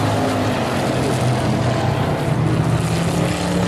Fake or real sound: real